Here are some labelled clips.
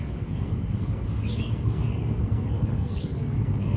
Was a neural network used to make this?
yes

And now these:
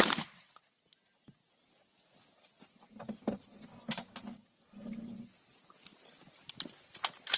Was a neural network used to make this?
no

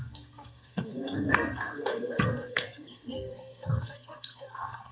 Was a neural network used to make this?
yes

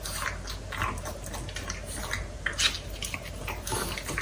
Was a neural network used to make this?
no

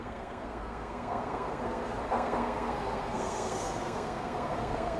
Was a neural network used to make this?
yes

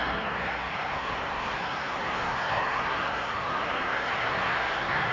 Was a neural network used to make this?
yes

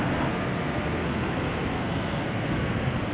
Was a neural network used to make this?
yes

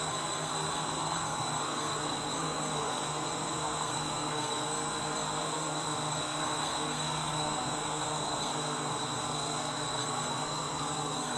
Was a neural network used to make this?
yes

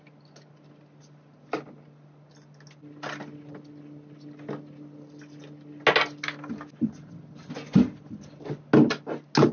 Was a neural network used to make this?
no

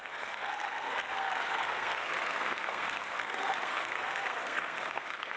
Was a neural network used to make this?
yes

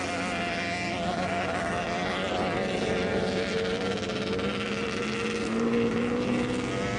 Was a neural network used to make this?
no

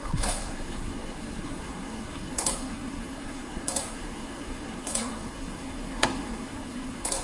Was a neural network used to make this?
yes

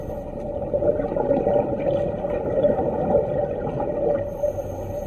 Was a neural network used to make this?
no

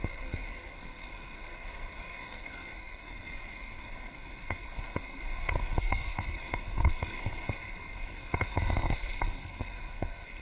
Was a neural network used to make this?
yes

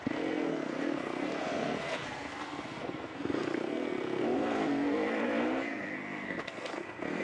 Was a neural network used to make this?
yes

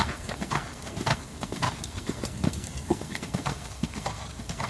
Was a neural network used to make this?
yes